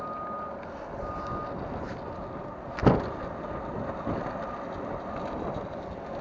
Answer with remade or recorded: recorded